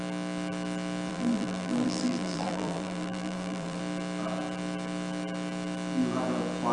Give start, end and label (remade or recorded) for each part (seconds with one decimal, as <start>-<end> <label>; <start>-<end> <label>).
0.0-1.1 recorded; 1.1-3.8 remade; 3.8-6.7 recorded